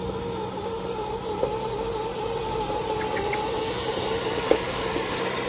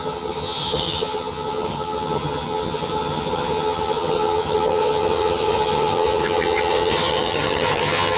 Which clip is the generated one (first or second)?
second